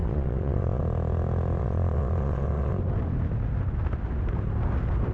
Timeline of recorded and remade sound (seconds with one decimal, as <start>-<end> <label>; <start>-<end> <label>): 0.0-0.8 remade; 0.8-1.6 recorded; 1.6-2.7 remade; 2.7-5.1 recorded